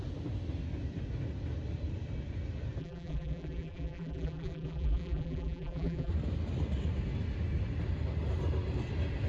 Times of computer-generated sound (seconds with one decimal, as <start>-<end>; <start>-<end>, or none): 2.8-6.1